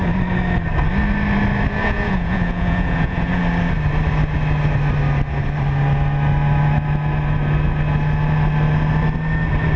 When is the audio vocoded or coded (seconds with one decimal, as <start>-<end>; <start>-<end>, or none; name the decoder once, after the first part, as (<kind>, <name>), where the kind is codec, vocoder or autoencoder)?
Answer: 1.8-3.4 (vocoder, Vocos)

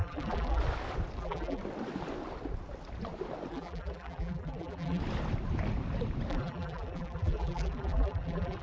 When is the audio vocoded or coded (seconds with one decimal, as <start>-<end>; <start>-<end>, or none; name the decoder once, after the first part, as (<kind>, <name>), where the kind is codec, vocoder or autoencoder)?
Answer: 0.0-0.6 (vocoder, BigVGAN v2); 1.2-1.6; 3.5-5.0; 6.3-8.6